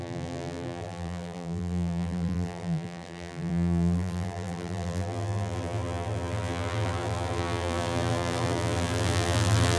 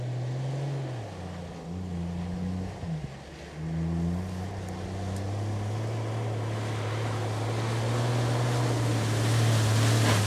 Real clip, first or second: second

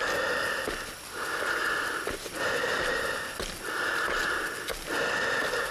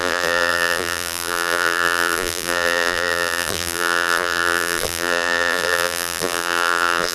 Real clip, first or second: first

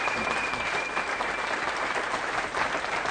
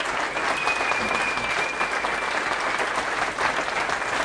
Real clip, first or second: second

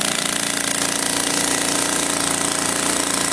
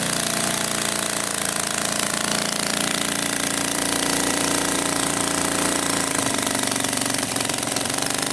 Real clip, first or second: first